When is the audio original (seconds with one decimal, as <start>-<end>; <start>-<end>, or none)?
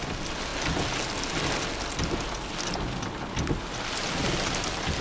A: 0.0-5.0